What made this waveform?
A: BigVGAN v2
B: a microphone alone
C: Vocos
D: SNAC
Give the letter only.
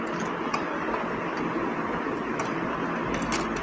B